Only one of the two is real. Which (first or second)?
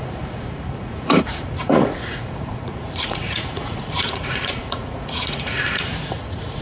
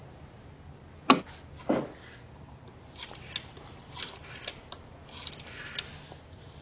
second